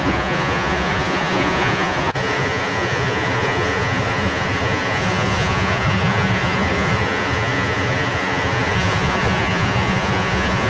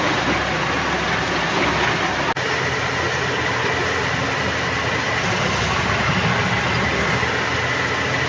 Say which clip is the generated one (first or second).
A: first